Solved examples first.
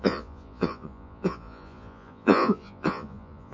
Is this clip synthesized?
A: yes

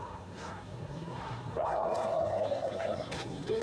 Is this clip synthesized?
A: yes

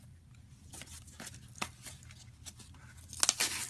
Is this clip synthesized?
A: no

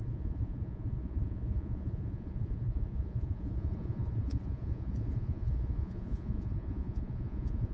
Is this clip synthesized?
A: yes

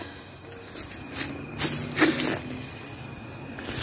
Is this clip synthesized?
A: no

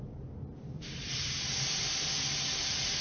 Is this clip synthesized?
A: no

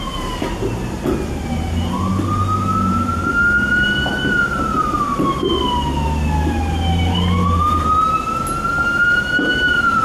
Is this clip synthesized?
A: no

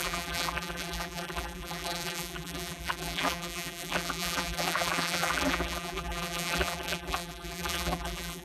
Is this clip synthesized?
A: yes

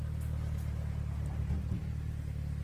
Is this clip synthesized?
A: no